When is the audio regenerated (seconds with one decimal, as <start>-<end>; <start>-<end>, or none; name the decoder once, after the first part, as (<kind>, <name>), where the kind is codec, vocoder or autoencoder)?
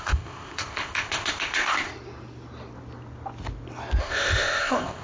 0.0-1.9 (codec, ZipCodec); 4.0-5.0